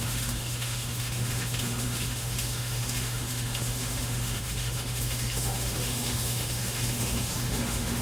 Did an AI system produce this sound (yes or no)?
yes